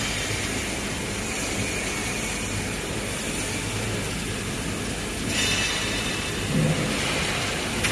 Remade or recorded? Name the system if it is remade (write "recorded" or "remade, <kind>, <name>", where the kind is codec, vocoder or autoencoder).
recorded